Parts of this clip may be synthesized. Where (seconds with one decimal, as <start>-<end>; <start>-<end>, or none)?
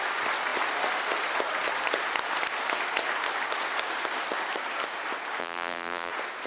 5.4-6.1